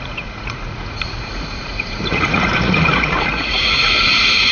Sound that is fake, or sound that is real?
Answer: fake